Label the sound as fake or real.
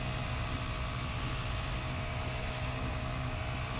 real